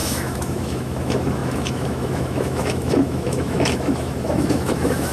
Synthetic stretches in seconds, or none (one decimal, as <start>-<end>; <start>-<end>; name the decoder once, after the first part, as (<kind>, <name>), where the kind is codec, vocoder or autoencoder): 0.0-5.1 (autoencoder, DAC-VAE)